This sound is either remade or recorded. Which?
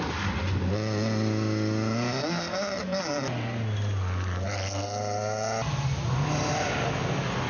recorded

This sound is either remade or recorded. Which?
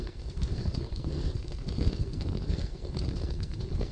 remade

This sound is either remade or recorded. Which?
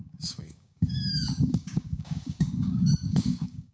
remade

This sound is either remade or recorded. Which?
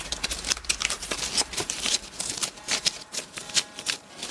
remade